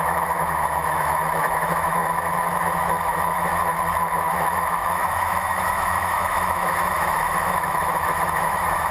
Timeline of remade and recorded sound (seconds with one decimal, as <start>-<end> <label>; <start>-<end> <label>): 0.0-8.9 remade